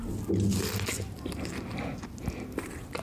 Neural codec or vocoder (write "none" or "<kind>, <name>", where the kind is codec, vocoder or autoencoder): none